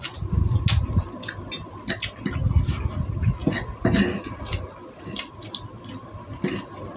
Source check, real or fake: real